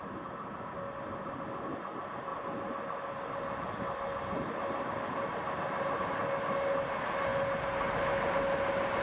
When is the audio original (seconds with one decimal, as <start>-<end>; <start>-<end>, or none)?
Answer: 0.0-9.0